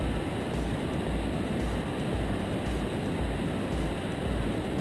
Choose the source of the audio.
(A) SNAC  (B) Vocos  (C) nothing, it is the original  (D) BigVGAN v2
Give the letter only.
C